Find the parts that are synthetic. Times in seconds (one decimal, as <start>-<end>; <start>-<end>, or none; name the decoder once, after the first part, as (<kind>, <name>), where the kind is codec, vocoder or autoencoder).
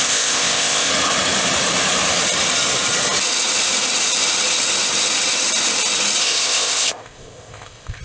0.0-0.9 (codec, ZipCodec); 6.2-8.0